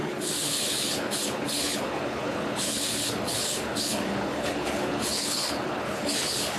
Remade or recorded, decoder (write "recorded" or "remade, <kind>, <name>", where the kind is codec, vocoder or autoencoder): remade, codec, HILCodec